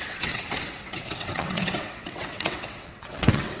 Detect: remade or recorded remade